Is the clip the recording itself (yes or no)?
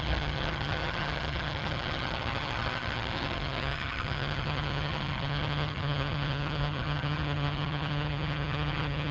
no